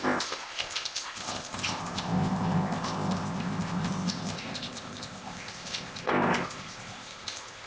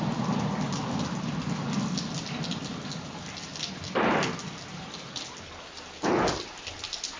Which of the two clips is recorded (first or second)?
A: second